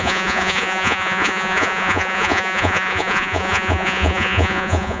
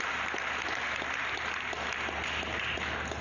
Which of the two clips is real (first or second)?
second